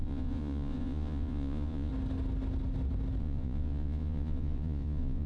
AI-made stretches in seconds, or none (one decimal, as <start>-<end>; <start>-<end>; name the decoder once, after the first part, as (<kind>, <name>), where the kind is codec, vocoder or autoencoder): 0.0-1.9 (vocoder, Vocos); 3.2-5.3